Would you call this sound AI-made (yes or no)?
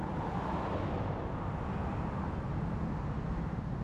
no